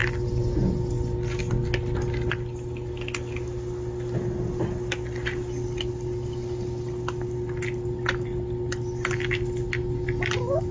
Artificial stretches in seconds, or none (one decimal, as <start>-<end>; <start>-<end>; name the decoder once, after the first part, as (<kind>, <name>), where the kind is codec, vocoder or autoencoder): none